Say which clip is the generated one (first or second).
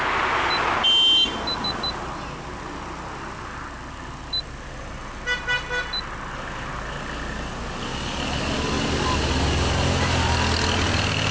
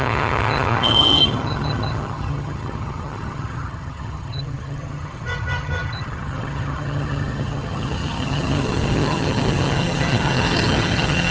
second